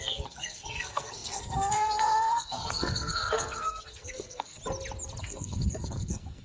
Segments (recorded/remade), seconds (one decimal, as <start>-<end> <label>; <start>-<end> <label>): 0.0-4.6 remade; 4.6-5.2 recorded; 5.2-6.4 remade